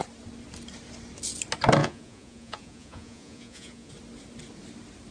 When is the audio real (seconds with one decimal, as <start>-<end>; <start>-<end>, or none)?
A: 0.0-1.8; 3.9-5.1